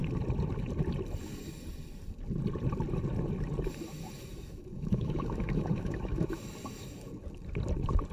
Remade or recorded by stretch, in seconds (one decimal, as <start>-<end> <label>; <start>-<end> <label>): 0.0-4.3 recorded; 4.3-6.4 remade; 6.4-8.1 recorded